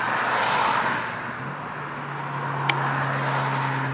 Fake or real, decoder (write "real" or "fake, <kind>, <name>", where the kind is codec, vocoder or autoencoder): real